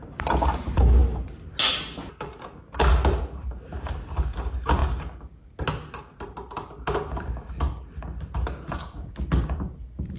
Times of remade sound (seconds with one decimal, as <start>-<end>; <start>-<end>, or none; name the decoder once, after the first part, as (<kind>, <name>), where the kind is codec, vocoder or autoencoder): none